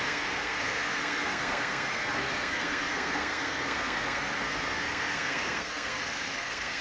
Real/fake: fake